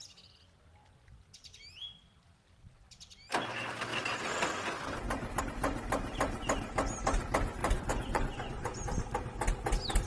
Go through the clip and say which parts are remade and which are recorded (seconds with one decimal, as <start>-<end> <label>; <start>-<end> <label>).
0.0-7.6 recorded; 7.6-8.8 remade; 8.8-10.1 recorded

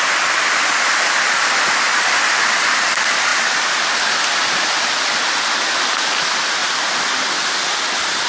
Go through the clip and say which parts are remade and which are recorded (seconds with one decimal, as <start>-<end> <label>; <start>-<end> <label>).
0.0-8.3 recorded

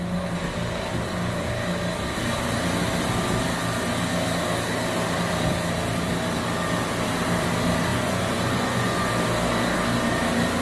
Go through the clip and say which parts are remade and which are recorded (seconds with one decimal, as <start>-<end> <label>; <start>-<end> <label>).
0.0-7.9 recorded; 7.9-9.1 remade; 9.1-10.6 recorded

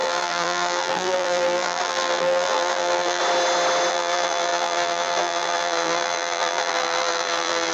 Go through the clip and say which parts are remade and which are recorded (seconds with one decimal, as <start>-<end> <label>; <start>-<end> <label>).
0.0-3.2 remade; 3.2-3.9 recorded; 3.9-7.7 remade

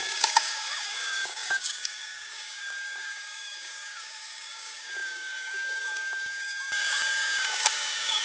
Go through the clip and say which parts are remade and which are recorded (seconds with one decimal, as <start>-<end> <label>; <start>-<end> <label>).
0.0-8.2 remade

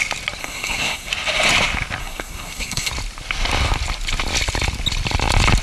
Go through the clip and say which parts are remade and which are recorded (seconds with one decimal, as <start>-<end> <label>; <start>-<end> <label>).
0.0-0.4 recorded; 0.4-1.1 remade; 1.1-2.0 recorded; 2.0-2.9 remade; 2.9-5.6 recorded

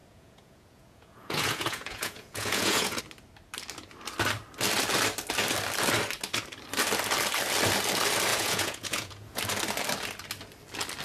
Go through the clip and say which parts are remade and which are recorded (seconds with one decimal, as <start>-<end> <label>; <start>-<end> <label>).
0.0-3.0 remade; 3.0-8.3 recorded; 8.3-9.4 remade; 9.4-11.0 recorded